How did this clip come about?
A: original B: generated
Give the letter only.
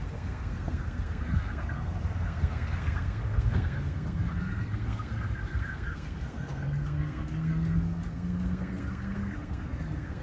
B